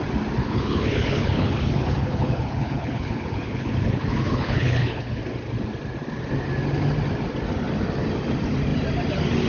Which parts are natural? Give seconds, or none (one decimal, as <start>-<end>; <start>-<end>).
0.0-0.4; 5.2-9.5